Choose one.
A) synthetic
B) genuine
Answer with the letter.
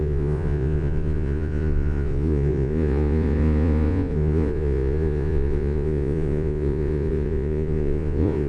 A